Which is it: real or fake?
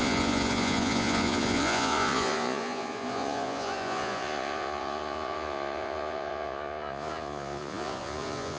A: fake